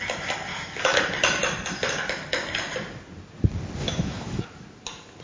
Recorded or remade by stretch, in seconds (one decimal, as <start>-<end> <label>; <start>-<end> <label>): 0.0-0.5 recorded; 0.5-1.0 remade; 1.0-3.8 recorded; 3.8-4.4 remade; 4.4-5.2 recorded